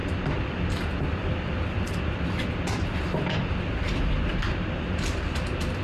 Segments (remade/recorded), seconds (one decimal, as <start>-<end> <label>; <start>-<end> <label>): 0.0-5.8 recorded